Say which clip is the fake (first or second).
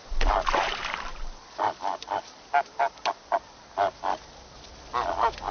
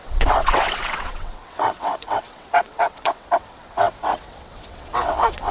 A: second